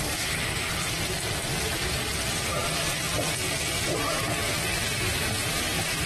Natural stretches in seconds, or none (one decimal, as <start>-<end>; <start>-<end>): 0.0-6.1